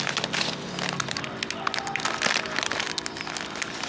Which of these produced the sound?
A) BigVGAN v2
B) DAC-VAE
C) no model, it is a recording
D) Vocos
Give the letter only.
C